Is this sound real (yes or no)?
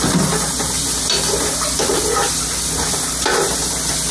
yes